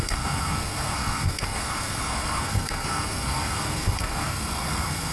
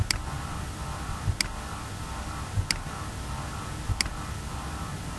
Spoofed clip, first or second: first